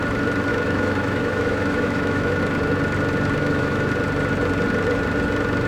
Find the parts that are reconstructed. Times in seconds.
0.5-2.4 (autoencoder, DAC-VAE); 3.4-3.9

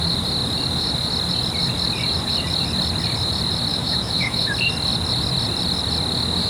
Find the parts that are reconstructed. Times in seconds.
3.7-4.5 (autoencoder, DAC-VAE)

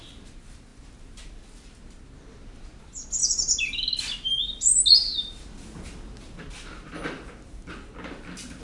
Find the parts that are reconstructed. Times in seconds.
none

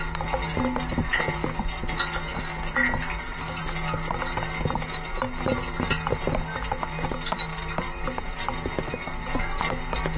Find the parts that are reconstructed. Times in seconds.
none

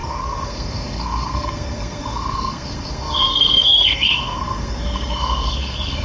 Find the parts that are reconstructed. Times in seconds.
0.0-6.0 (codec, SNAC)

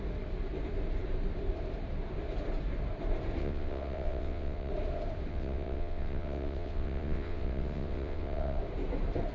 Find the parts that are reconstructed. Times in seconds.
3.4-4.7 (vocoder, WaveNeXt); 5.3-8.6